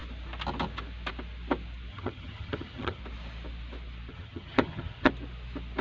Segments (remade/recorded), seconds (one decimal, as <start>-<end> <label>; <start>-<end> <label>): 0.0-1.9 recorded; 1.9-3.0 remade; 3.0-4.1 recorded; 4.1-5.1 remade; 5.1-5.8 recorded